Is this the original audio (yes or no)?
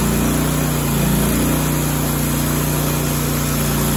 yes